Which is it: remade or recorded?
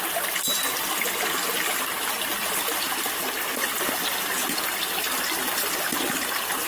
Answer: recorded